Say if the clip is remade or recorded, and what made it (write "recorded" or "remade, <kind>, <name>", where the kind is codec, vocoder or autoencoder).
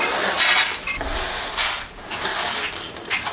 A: recorded